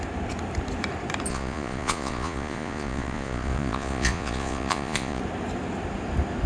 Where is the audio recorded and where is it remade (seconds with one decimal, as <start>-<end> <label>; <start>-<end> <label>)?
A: 0.0-1.3 recorded; 1.3-5.2 remade; 5.2-6.5 recorded